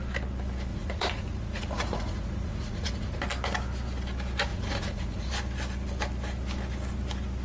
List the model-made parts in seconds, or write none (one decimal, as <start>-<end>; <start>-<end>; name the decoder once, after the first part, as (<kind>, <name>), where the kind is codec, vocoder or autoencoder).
0.7-3.2 (vocoder, Vocos); 4.5-5.3